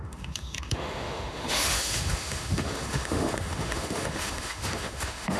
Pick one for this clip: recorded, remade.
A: remade